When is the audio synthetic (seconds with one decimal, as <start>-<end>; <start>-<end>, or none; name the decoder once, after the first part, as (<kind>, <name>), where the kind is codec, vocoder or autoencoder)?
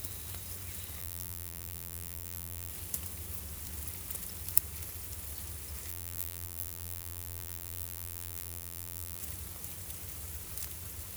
1.0-2.7 (vocoder, BigVGAN v2); 5.9-9.2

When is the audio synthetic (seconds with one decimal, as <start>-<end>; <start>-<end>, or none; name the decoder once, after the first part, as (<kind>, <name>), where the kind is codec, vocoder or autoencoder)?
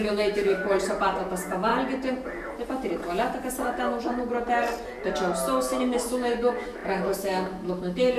0.0-0.6 (autoencoder, DAC-VAE); 1.2-1.7; 5.8-8.2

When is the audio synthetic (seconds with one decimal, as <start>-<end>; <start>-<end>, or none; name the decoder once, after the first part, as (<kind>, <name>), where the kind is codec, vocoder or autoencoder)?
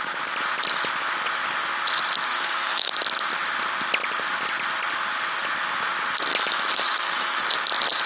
2.3-2.9 (autoencoder, DAC-VAE); 6.3-7.4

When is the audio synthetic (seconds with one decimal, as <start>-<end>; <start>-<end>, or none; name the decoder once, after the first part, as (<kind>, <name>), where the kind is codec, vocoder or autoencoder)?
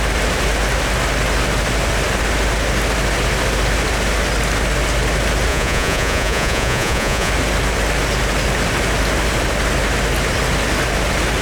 5.5-7.3 (vocoder, Vocos)